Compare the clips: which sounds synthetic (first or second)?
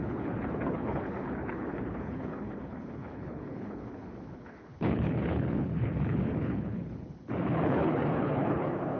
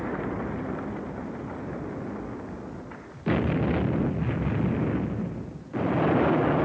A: first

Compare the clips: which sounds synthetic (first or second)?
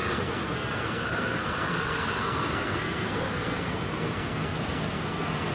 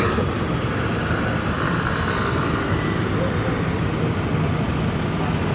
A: first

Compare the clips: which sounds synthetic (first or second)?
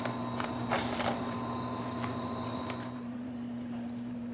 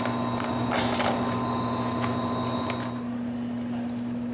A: first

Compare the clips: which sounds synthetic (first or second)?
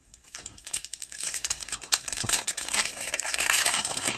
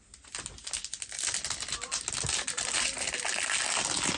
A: first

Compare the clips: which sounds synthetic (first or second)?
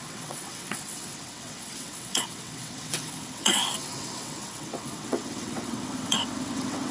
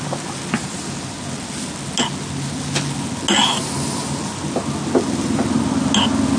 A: first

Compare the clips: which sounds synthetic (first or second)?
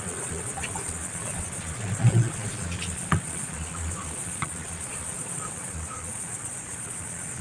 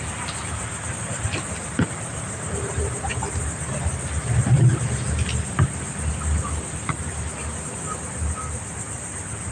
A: first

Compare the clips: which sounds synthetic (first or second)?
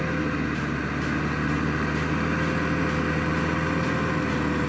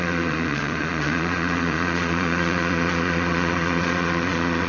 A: second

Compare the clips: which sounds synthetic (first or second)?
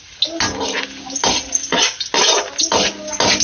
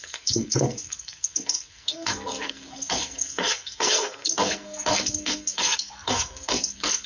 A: second